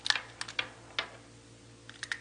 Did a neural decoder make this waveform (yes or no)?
no